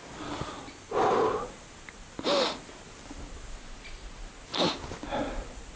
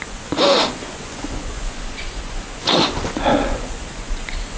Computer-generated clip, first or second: second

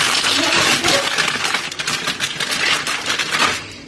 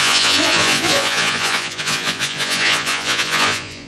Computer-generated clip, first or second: second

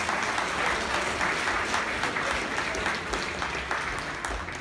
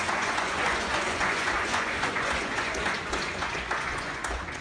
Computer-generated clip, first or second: second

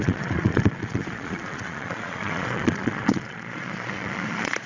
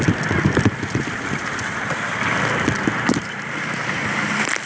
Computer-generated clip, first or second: first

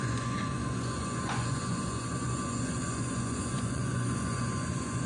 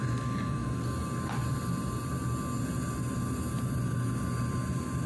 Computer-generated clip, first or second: first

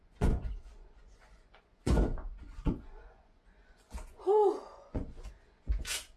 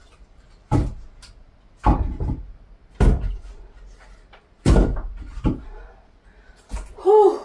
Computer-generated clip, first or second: first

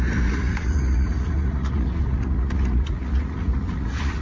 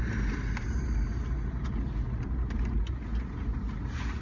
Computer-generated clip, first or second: first